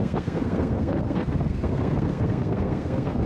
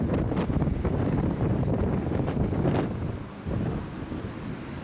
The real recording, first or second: second